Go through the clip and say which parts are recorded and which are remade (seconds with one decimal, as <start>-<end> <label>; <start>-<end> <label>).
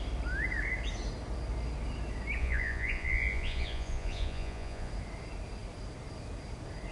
0.0-2.4 recorded; 2.4-4.9 remade; 4.9-6.9 recorded